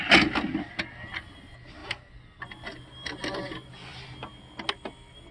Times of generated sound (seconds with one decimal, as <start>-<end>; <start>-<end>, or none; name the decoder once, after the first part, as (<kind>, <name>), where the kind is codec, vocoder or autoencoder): none